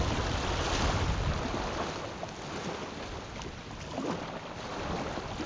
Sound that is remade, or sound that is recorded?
recorded